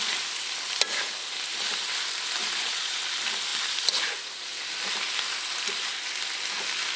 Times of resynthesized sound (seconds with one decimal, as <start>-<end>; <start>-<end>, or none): 2.4-3.0